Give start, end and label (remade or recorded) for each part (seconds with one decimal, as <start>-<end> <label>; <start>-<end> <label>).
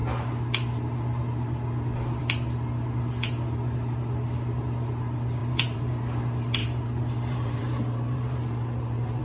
0.0-5.4 recorded; 5.4-5.9 remade; 5.9-6.6 recorded; 6.6-9.2 remade